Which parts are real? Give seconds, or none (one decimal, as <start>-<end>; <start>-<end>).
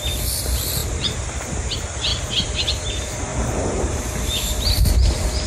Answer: 0.0-0.8; 1.3-3.3; 4.0-5.5